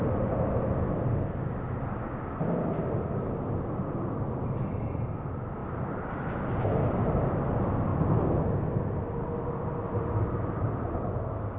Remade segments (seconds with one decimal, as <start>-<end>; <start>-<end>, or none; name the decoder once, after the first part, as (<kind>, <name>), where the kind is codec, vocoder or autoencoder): none